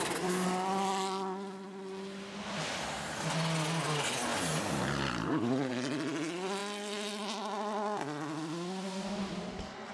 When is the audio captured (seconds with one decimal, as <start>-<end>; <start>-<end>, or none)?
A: 0.0-9.9